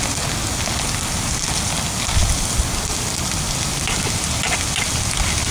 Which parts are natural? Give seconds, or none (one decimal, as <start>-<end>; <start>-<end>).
0.0-5.5